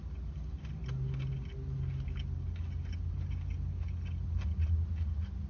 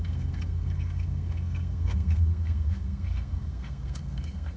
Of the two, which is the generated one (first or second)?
second